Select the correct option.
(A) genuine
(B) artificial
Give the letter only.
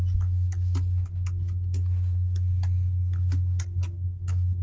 A